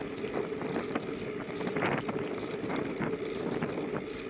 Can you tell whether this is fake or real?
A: real